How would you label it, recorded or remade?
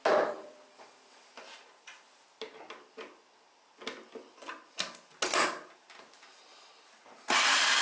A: recorded